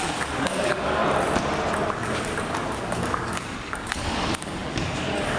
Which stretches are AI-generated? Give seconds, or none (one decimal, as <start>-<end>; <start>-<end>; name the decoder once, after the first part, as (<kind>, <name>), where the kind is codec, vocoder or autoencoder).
0.0-1.0 (codec, DAC); 1.9-5.4